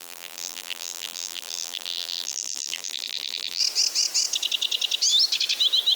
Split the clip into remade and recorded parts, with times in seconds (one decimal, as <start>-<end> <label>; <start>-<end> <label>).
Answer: 0.0-3.6 remade; 3.6-6.0 recorded